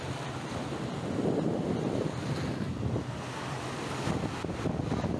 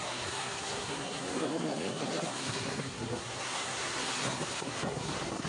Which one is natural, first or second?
first